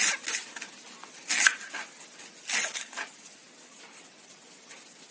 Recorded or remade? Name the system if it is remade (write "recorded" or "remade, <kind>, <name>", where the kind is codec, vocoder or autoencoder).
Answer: recorded